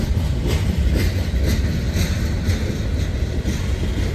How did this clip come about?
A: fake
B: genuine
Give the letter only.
B